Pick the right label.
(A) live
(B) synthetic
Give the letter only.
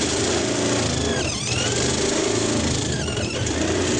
A